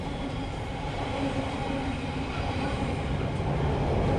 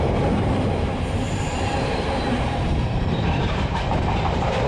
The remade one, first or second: second